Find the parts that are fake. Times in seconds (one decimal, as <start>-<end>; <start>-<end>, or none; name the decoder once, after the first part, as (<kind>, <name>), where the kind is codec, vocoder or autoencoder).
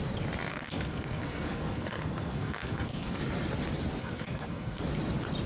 0.5-3.2 (codec, SNAC); 4.0-4.8